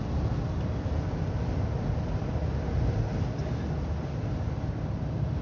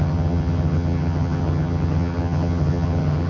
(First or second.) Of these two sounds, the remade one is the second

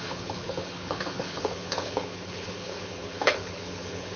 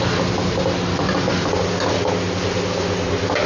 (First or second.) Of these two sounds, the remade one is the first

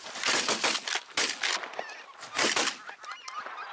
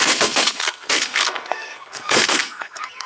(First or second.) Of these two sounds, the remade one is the second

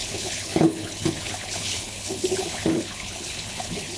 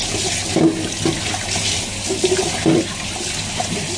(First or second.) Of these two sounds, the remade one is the first